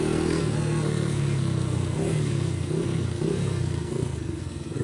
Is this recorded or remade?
remade